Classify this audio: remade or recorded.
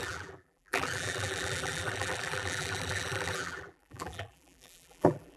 remade